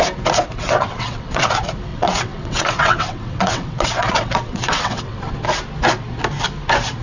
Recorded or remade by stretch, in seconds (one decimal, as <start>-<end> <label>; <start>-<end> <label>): 0.0-0.5 recorded; 0.5-1.5 remade; 1.5-1.9 recorded; 1.9-5.3 remade; 5.3-7.0 recorded